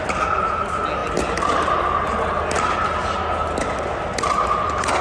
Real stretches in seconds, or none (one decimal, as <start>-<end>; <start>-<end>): 0.0-5.0